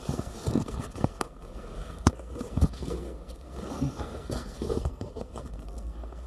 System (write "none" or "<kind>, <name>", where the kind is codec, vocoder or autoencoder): codec, SNAC